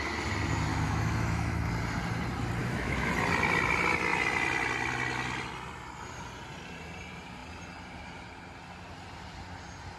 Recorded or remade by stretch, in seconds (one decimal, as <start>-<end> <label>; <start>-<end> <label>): 0.0-0.7 recorded; 0.7-1.7 remade; 1.7-2.6 recorded; 2.6-3.1 remade; 3.1-10.0 recorded